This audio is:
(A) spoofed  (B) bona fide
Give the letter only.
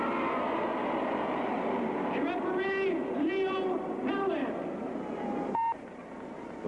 B